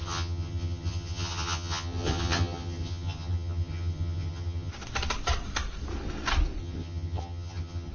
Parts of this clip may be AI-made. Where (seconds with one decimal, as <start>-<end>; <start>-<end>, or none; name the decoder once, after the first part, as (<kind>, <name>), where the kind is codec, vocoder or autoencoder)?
0.0-4.7 (vocoder, HiFi-GAN); 6.6-7.9